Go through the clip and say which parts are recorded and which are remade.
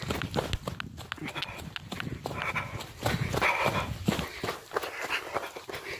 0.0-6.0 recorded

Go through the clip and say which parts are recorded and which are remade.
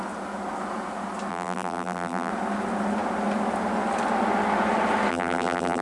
0.0-1.3 recorded; 1.3-2.3 remade; 2.3-5.1 recorded; 5.1-5.8 remade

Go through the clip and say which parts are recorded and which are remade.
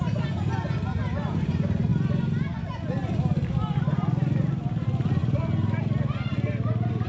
0.0-7.1 recorded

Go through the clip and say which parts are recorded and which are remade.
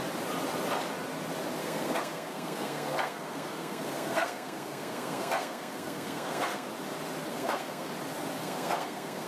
0.0-1.6 recorded; 1.6-6.7 remade; 6.7-7.3 recorded; 7.3-7.9 remade; 7.9-8.4 recorded; 8.4-9.3 remade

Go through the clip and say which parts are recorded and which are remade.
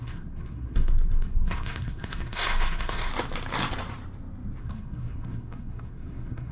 0.0-3.1 remade; 3.1-4.6 recorded; 4.6-6.5 remade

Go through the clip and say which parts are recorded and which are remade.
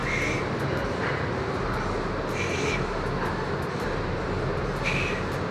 0.0-5.5 recorded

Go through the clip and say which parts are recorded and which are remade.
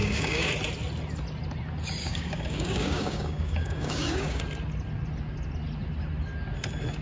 0.0-0.5 remade; 0.5-2.0 recorded; 2.0-4.4 remade; 4.4-7.0 recorded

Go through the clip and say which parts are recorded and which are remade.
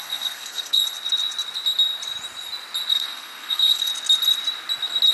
0.0-0.8 remade; 0.8-2.9 recorded; 2.9-3.9 remade; 3.9-5.1 recorded